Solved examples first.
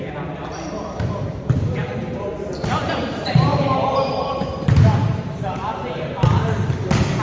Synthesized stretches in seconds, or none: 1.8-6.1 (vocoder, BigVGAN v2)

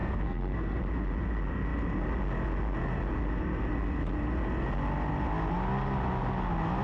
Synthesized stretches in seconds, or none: 0.0-0.8 (codec, SNAC)

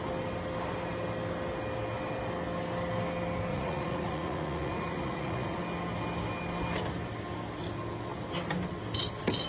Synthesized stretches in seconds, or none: 3.5-5.6 (vocoder, Vocos)

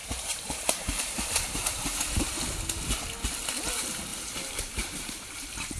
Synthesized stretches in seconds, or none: 0.0-2.3 (vocoder, BigVGAN v2); 4.1-5.8

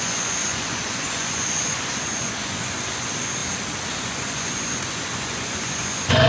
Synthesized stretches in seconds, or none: 0.0-3.4 (vocoder, Vocos); 4.0-6.3

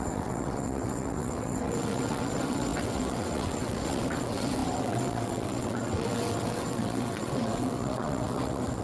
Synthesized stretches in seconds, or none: 0.0-8.8 (vocoder, WaveNeXt)

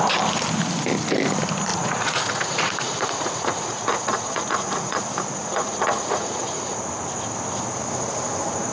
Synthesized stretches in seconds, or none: 1.7-5.0 (vocoder, Vocos); 5.4-6.8

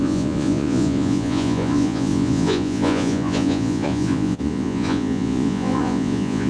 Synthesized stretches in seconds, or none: 0.0-6.5 (vocoder, Vocos)